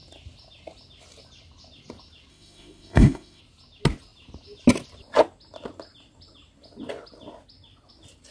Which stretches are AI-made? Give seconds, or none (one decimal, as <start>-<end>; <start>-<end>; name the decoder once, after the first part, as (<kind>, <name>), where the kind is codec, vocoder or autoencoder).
2.3-3.4 (autoencoder, DAC-VAE)